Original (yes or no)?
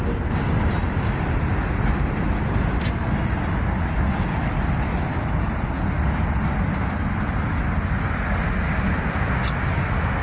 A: yes